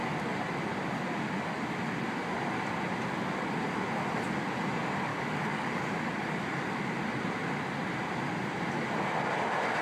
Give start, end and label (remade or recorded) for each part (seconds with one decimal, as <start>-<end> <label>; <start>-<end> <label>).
0.0-5.1 recorded; 5.1-5.7 remade; 5.7-9.8 recorded